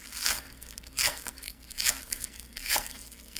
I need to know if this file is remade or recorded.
remade